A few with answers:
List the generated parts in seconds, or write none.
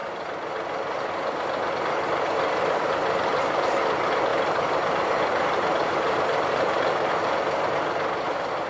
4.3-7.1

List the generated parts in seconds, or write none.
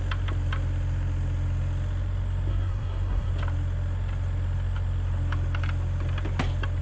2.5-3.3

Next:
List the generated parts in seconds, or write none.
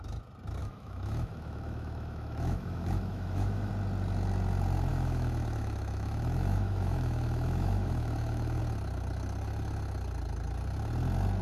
0.6-3.7; 4.9-8.6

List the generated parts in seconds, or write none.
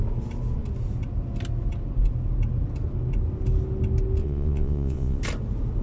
4.2-5.2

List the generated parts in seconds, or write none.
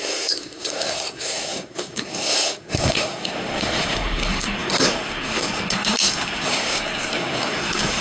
0.0-8.0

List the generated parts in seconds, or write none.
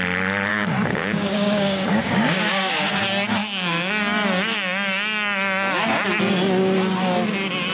0.5-2.9; 3.4-3.9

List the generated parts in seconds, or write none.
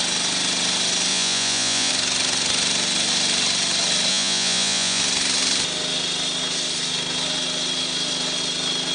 1.1-1.9; 4.1-5.0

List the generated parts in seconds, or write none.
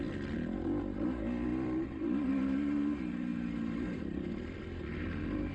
1.5-2.3; 3.3-4.6